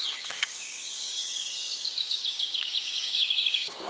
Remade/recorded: remade